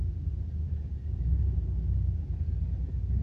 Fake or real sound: real